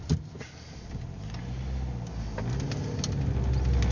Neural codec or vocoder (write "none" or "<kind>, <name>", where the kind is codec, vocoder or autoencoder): none